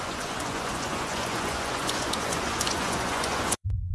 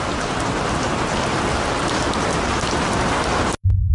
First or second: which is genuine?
second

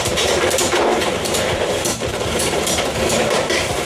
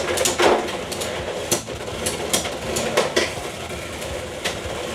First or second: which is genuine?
second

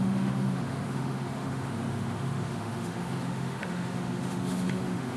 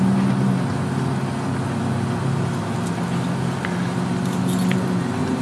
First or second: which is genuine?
second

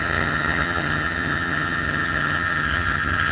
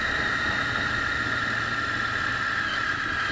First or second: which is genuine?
second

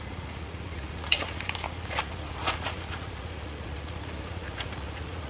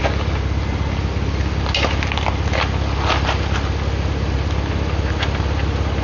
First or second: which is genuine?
second